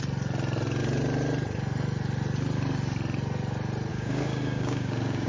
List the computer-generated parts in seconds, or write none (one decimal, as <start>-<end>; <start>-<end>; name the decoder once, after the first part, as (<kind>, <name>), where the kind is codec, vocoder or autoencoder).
3.9-5.3 (codec, DAC)

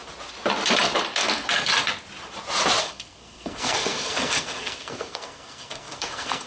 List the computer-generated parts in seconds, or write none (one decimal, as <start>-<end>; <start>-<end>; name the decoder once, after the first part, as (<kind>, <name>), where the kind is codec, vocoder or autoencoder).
1.1-1.7 (codec, SNAC); 2.8-6.5

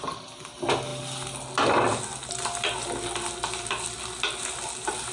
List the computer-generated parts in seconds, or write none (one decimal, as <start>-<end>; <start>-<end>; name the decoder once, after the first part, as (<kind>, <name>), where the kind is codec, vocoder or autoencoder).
none

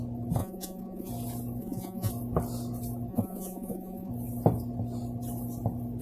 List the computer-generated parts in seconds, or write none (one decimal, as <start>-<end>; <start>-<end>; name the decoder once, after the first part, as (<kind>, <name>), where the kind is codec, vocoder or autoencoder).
0.4-1.1 (vocoder, Vocos); 1.6-2.1; 3.1-4.1

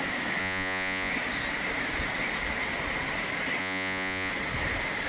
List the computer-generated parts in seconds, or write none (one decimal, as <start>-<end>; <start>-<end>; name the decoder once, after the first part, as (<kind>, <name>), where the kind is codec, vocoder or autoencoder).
0.4-1.1 (vocoder, Vocos); 3.6-4.3

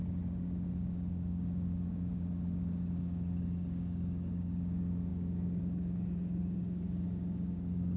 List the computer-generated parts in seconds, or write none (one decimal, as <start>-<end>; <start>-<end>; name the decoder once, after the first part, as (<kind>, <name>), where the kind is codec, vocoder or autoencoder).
0.0-8.0 (codec, DAC)